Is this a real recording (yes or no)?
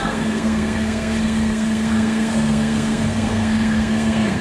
no